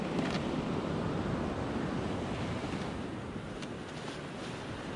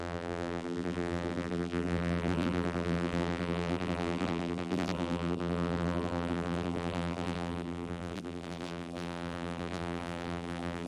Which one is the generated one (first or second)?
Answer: second